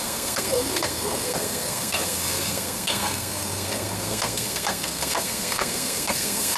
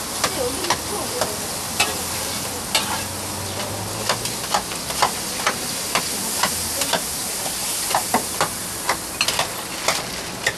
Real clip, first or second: second